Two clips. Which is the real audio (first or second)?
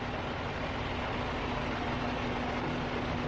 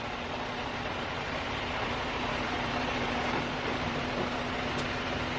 first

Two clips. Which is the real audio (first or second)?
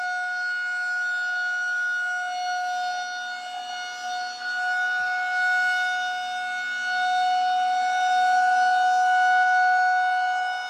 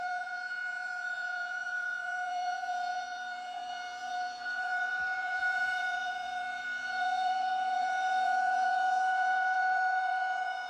first